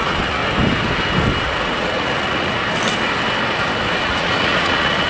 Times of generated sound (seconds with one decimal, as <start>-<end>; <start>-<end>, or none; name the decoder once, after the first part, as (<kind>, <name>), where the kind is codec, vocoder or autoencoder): 0.0-0.4 (vocoder, Vocos); 1.4-2.6; 4.0-5.1